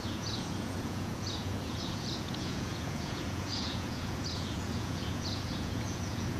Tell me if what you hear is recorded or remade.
remade